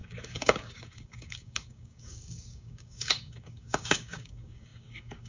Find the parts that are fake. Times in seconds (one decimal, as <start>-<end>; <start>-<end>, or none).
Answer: 0.0-5.3